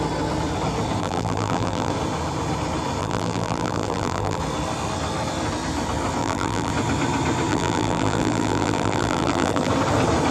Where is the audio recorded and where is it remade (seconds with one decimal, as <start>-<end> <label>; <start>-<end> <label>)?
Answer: 0.0-1.0 recorded; 1.0-1.9 remade; 1.9-3.0 recorded; 3.0-4.4 remade; 4.4-6.2 recorded; 6.2-6.7 remade; 6.7-7.5 recorded; 7.5-9.7 remade; 9.7-10.3 recorded